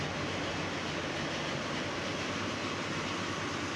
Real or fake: real